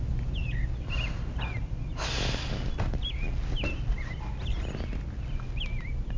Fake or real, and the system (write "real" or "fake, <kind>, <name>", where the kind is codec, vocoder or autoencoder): real